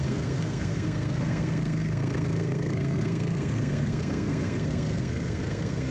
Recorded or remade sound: remade